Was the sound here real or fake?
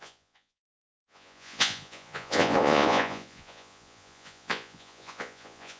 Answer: fake